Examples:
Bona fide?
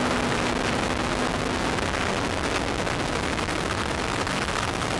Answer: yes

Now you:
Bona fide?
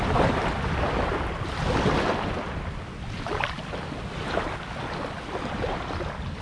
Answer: yes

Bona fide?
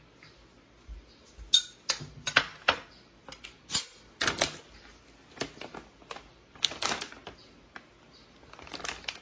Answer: yes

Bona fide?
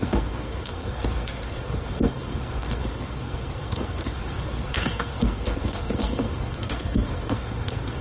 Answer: no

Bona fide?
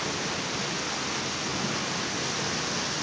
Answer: yes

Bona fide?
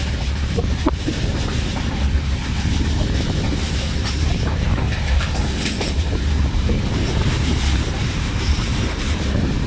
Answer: no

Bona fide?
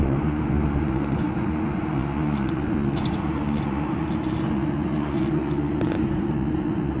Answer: no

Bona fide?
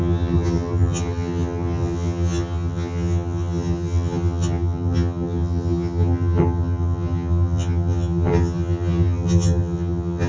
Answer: no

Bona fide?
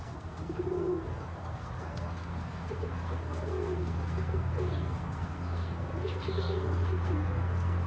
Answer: no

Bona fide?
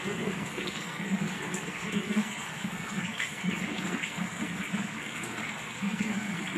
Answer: no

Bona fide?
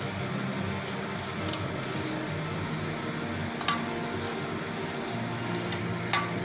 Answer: yes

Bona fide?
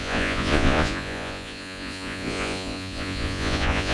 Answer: no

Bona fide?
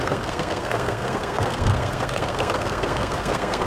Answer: no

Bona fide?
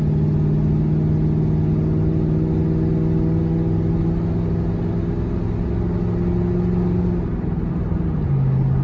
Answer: yes